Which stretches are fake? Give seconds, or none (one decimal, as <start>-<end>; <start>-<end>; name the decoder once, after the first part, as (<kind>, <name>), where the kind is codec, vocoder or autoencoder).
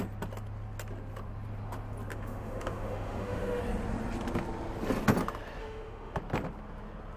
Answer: 2.1-3.6 (autoencoder, DAC-VAE); 5.6-6.2